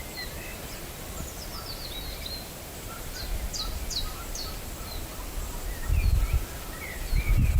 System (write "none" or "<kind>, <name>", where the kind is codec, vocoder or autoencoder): none